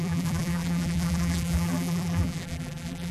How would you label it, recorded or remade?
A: remade